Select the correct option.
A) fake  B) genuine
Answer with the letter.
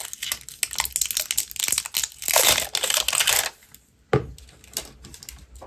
B